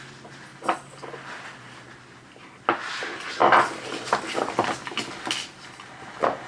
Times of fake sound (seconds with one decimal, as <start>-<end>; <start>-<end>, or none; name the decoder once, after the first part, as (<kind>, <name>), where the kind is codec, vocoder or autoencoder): none